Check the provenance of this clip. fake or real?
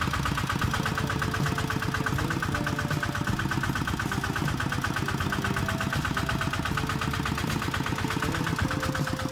real